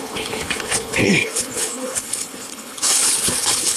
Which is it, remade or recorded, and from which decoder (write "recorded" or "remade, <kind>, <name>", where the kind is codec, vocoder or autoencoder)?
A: remade, codec, HILCodec